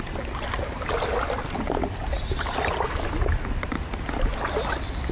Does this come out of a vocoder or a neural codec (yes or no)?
no